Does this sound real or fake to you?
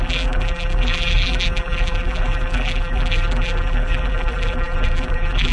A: fake